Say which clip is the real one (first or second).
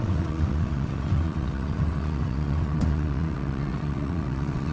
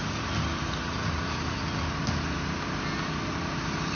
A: second